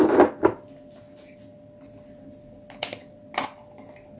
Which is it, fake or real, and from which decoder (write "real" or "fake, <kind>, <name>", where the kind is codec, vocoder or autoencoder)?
real